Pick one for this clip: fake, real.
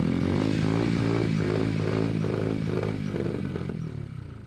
real